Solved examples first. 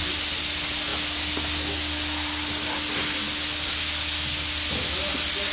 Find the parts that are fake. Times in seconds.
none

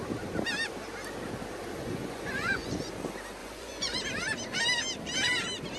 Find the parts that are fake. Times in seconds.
1.8-2.9 (vocoder, Vocos); 3.4-4.0

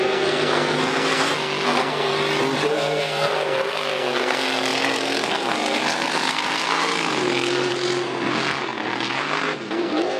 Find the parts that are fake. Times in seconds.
0.0-2.1 (codec, SNAC); 2.7-10.2

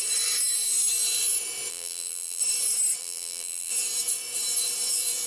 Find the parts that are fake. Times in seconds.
1.7-2.4 (vocoder, BigVGAN v2); 3.0-3.7

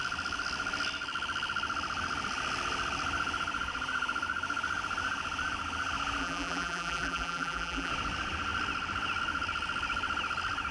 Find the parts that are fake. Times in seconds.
6.2-7.9 (vocoder, BigVGAN v2)

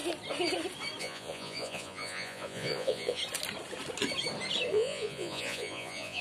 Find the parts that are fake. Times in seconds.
1.0-3.2 (vocoder, Vocos); 4.7-6.2